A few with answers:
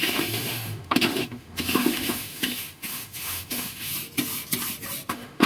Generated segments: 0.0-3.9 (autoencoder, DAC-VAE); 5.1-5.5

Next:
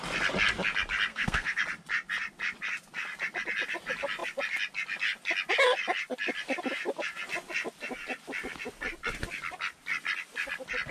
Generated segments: 1.1-1.6 (codec, SNAC)

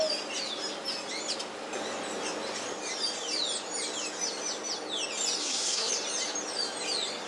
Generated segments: 5.4-5.9 (codec, SNAC)

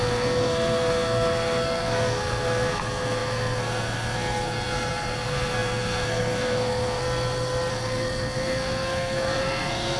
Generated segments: 0.0-7.0 (codec, SNAC); 7.7-10.0

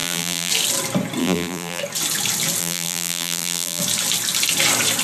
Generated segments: 0.0-0.5 (vocoder, BigVGAN v2); 1.2-1.8; 2.6-3.8

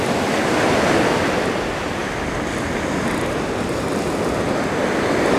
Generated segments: none

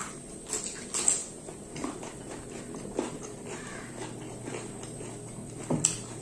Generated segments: 1.2-3.9 (vocoder, BigVGAN v2); 5.4-6.2

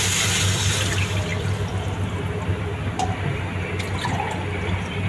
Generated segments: none